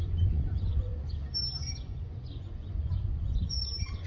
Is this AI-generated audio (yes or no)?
yes